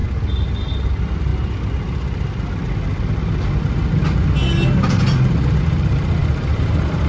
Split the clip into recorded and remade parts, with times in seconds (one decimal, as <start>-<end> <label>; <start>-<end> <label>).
0.0-0.9 recorded; 0.9-1.3 remade; 1.3-5.6 recorded; 5.6-7.1 remade

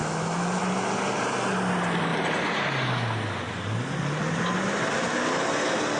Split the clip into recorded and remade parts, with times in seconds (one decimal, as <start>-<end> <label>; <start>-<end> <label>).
0.0-0.6 remade; 0.6-6.0 recorded

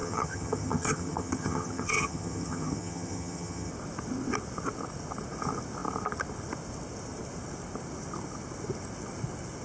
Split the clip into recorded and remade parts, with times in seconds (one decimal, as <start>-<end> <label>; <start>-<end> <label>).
0.0-3.7 remade; 3.7-9.6 recorded

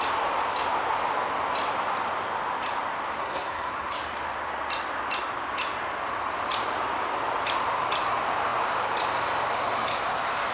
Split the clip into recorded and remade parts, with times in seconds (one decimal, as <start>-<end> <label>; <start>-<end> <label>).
0.0-3.2 recorded; 3.2-4.0 remade; 4.0-10.5 recorded